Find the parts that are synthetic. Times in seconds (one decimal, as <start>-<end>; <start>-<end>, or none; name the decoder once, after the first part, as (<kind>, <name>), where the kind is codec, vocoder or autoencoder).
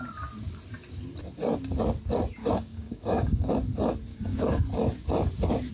2.4-3.5 (codec, DAC); 4.1-4.6